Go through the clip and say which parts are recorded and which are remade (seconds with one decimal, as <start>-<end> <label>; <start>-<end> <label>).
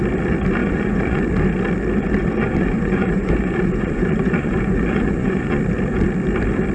0.0-0.6 recorded; 0.6-1.2 remade; 1.2-2.2 recorded; 2.2-5.6 remade; 5.6-6.7 recorded